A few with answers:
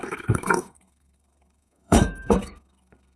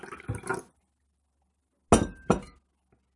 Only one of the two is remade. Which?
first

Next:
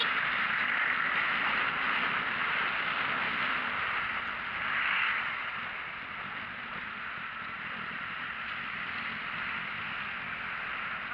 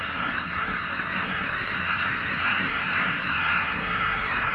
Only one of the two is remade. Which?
second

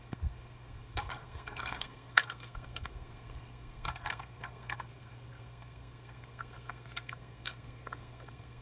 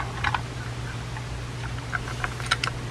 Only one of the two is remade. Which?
first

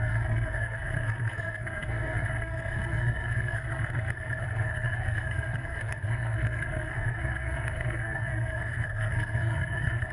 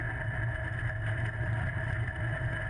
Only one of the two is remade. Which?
first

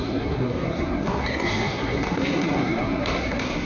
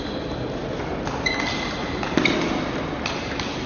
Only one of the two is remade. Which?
first